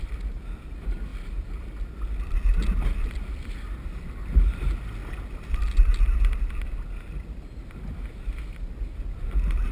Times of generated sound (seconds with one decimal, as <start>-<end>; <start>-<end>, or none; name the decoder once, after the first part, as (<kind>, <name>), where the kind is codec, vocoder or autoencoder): none